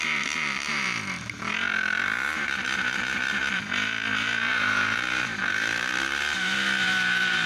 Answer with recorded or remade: remade